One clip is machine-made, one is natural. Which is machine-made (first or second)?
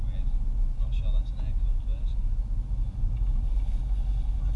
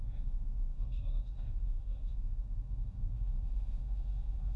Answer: second